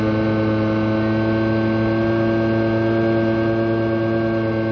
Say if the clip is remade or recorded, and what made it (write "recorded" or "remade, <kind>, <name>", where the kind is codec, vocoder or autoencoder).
recorded